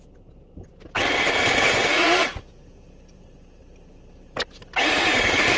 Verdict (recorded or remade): recorded